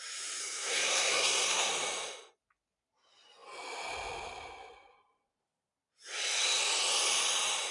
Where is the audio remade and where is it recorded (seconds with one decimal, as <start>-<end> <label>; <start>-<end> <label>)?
0.0-0.4 recorded; 0.4-1.7 remade; 1.7-7.7 recorded